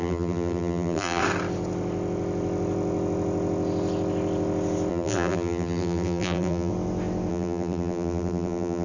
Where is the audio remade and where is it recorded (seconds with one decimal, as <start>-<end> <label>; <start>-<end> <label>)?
0.0-1.2 remade; 1.2-4.9 recorded; 4.9-6.7 remade; 6.7-7.3 recorded; 7.3-8.8 remade